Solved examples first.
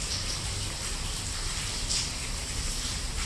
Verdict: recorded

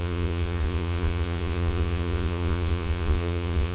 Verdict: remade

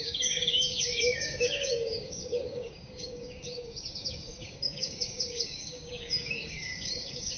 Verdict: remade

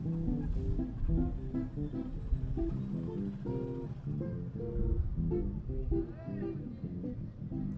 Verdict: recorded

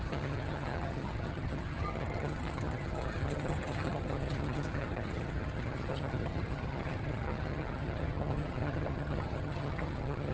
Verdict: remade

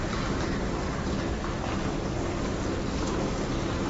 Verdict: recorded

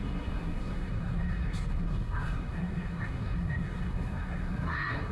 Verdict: remade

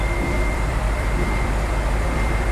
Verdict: remade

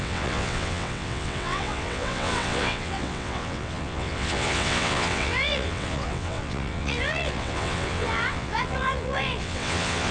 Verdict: remade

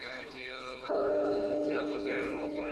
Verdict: remade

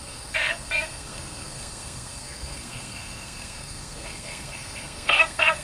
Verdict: remade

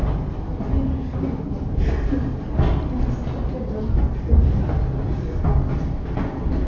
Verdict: recorded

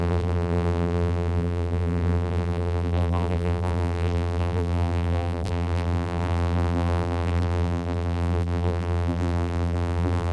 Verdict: remade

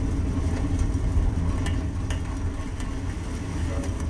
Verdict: recorded